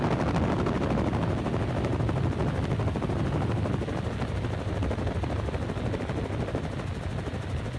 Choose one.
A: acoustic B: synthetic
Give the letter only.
A